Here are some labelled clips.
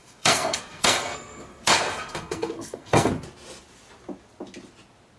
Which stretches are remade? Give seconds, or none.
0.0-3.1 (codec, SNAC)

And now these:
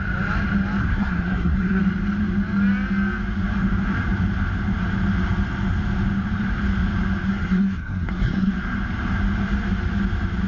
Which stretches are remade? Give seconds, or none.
0.8-1.8 (codec, SNAC); 7.3-8.5

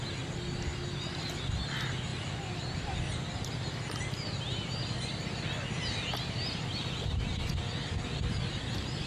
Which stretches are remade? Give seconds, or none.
none

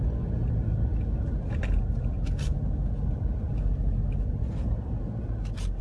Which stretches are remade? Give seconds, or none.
none

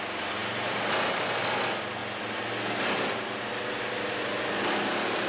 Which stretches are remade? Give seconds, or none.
none

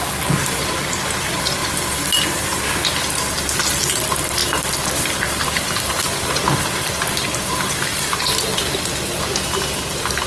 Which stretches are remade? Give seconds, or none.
none

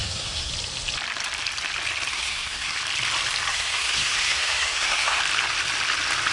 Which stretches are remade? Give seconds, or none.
0.0-0.5 (codec, SNAC); 2.1-2.8; 3.5-5.2